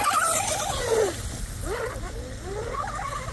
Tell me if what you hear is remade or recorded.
recorded